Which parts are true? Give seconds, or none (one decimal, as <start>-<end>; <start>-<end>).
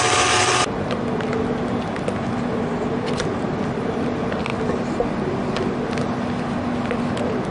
0.0-7.5